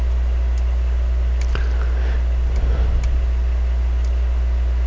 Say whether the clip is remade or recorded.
recorded